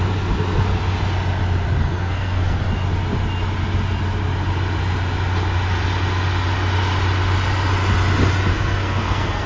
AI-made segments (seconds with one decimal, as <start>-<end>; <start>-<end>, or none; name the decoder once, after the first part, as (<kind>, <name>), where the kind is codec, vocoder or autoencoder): 1.8-2.6 (codec, SNAC); 8.5-9.5